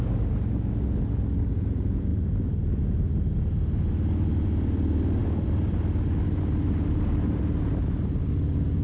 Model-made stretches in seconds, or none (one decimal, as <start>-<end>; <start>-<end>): none